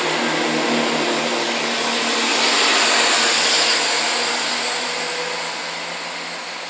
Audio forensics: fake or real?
real